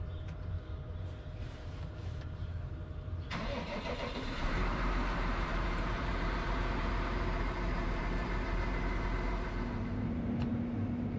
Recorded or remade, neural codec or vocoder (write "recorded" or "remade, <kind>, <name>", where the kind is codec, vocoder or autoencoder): remade, vocoder, BigVGAN v2